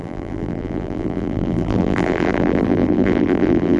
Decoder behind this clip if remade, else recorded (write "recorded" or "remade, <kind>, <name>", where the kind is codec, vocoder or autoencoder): remade, vocoder, BigVGAN v2